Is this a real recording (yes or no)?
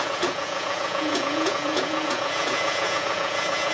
no